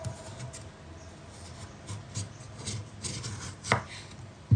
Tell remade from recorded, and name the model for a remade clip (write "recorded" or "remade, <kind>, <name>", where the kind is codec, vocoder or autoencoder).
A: recorded